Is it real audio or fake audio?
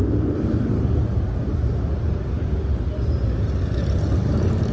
real